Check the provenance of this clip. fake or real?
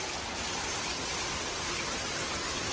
real